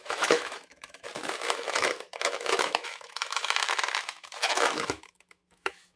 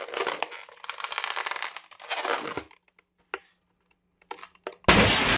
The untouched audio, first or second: second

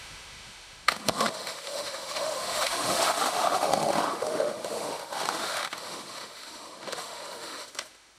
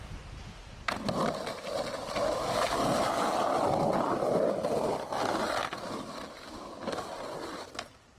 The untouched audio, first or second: second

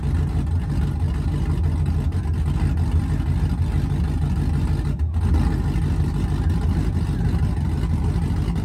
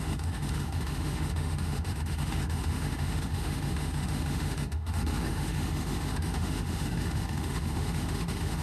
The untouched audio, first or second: first